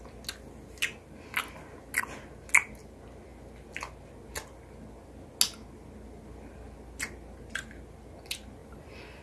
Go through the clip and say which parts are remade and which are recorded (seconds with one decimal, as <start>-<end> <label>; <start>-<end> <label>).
0.0-8.6 recorded; 8.6-9.2 remade